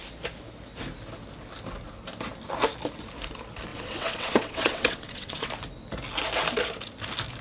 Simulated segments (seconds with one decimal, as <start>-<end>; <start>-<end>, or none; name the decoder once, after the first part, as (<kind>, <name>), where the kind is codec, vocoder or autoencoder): 3.7-5.5 (vocoder, WaveNeXt)